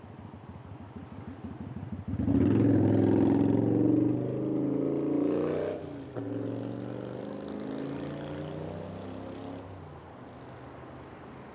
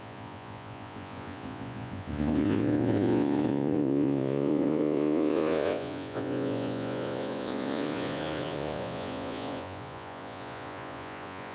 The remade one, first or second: second